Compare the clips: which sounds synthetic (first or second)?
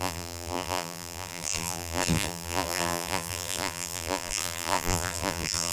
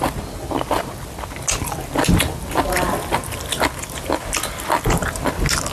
first